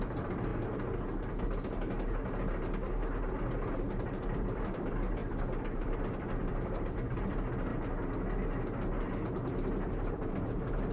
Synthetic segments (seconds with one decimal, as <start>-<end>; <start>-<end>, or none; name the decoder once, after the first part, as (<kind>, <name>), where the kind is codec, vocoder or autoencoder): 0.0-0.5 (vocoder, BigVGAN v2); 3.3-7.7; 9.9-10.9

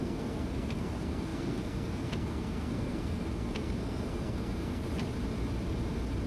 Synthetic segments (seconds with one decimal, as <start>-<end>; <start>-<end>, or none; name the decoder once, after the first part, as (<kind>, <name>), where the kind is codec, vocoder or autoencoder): 0.0-4.8 (codec, SNAC)

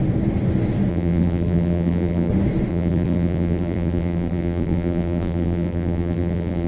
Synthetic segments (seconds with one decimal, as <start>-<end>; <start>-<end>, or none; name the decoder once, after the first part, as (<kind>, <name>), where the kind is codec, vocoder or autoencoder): 0.9-2.3 (vocoder, BigVGAN v2); 2.7-6.7